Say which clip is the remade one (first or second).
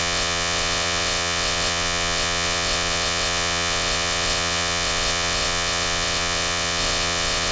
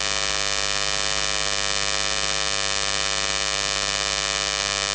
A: first